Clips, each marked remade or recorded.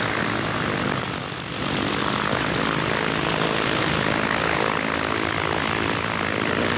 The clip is recorded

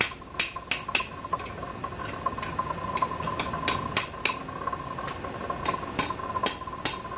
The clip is recorded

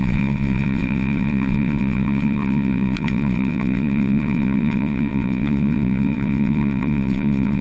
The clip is remade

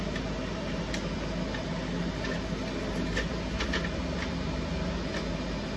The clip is recorded